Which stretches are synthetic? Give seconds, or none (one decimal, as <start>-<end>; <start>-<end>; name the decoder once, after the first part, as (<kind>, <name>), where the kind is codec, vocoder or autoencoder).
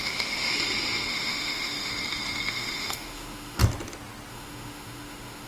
0.0-0.5 (autoencoder, DAC-VAE); 1.1-1.9; 2.5-3.6; 4.3-5.5